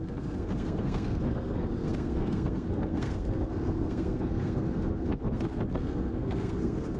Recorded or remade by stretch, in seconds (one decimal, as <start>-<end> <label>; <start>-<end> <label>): 0.0-7.0 remade

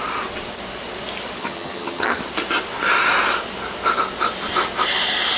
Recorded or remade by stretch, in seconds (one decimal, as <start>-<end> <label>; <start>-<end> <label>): 0.0-1.4 recorded; 1.4-2.2 remade; 2.2-5.4 recorded

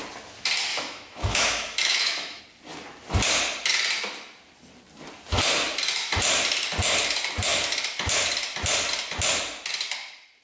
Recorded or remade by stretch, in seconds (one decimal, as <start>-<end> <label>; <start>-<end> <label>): 0.0-0.7 recorded; 0.7-2.4 remade; 2.4-10.4 recorded

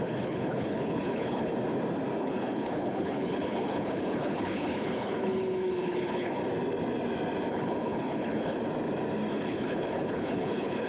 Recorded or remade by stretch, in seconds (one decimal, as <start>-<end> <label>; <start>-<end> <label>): 0.0-1.5 remade; 1.5-2.2 recorded; 2.2-6.4 remade; 6.4-7.5 recorded; 7.5-8.6 remade; 8.6-9.3 recorded; 9.3-10.9 remade

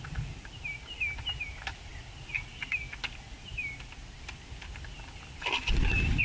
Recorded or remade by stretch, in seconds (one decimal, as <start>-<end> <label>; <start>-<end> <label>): 0.0-6.2 recorded

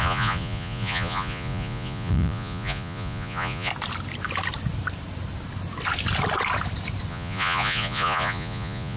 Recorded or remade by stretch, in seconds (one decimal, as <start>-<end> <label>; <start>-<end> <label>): 0.0-3.7 remade; 3.7-7.1 recorded; 7.1-9.0 remade

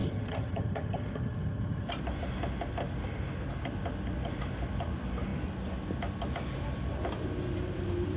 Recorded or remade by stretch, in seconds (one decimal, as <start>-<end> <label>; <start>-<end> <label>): 0.0-1.9 remade; 1.9-8.2 recorded

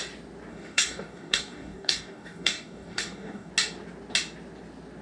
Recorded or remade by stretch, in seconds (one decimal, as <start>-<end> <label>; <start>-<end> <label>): 0.0-0.5 recorded; 0.5-3.5 remade; 3.5-5.0 recorded